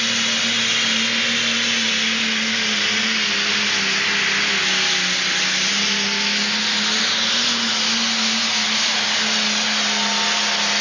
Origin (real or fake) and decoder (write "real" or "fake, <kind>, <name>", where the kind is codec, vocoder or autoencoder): real